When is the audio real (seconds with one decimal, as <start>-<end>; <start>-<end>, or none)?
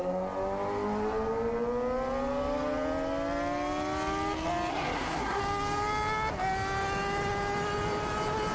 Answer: 0.0-4.7; 5.4-8.5